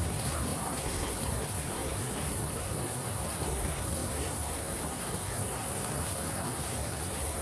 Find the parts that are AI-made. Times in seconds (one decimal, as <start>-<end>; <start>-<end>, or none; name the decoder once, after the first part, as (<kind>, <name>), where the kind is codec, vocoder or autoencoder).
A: 0.0-7.4 (codec, SNAC)